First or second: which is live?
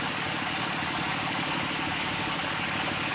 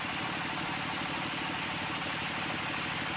second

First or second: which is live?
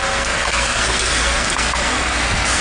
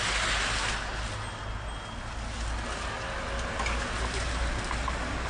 second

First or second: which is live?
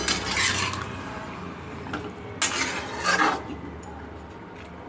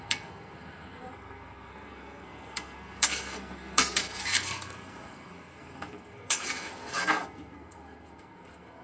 first